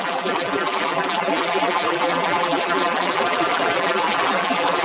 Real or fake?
fake